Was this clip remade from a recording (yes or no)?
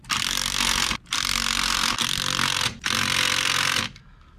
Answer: no